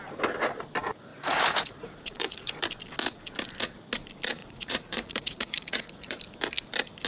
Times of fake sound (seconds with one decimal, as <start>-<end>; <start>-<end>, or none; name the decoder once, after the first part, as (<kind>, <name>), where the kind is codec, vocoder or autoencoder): 1.1-2.5 (vocoder, Vocos); 4.4-6.2